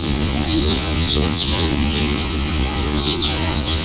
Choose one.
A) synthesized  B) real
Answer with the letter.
A